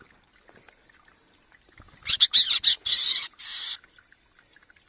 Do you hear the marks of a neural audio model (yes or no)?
no